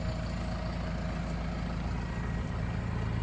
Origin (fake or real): real